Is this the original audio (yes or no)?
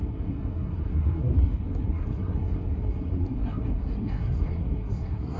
no